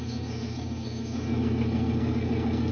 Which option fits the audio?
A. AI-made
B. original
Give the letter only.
A